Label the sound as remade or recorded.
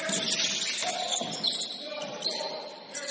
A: recorded